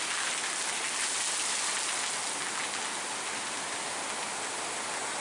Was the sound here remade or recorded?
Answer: recorded